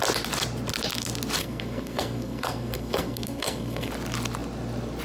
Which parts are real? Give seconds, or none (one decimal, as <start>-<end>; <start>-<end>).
0.0-1.4; 3.9-5.0